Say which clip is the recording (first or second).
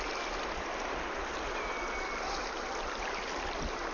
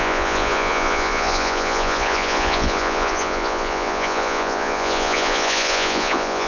first